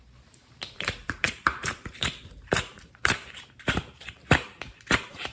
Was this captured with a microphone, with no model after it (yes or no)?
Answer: no